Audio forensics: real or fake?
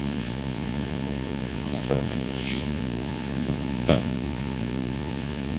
fake